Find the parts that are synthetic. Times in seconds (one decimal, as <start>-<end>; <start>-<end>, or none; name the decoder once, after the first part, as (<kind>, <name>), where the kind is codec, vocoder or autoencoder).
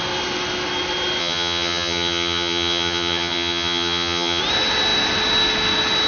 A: 1.2-4.4 (vocoder, HiFi-GAN)